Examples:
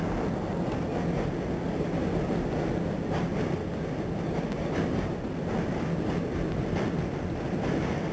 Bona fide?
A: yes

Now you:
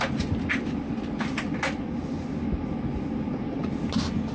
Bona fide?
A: yes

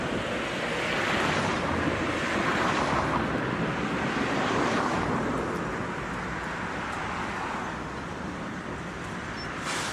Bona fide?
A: yes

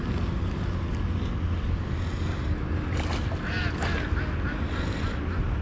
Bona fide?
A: yes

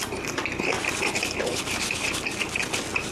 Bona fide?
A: yes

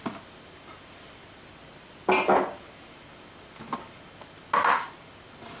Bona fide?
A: yes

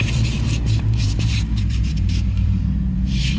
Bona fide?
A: no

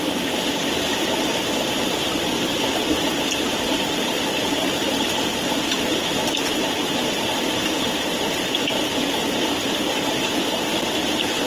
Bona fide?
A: no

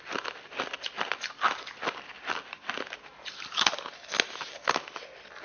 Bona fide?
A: yes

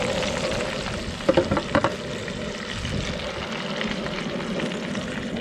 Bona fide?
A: yes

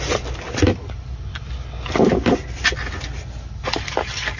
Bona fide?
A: yes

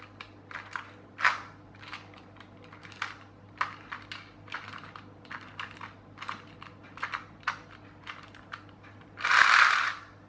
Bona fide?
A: yes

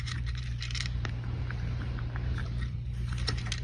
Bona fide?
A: no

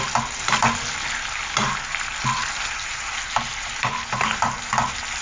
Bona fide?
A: yes